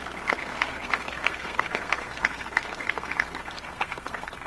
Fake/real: fake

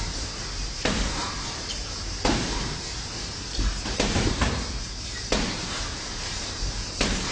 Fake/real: fake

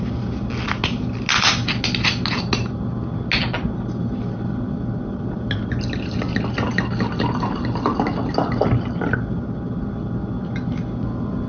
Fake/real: real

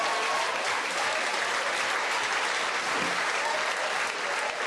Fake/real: real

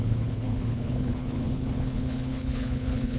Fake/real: fake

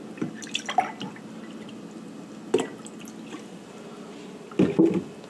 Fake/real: real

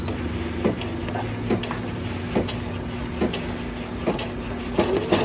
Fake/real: real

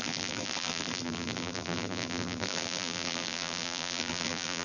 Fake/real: fake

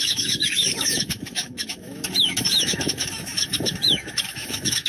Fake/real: fake